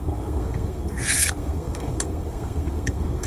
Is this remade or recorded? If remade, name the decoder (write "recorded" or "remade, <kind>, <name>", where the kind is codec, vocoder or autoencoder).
remade, codec, SNAC